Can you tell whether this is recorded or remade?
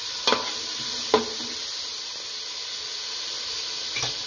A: recorded